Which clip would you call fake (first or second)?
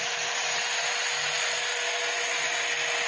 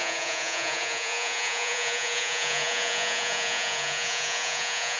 second